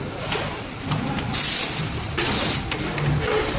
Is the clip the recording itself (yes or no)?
yes